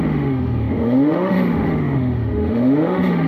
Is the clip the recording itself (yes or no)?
no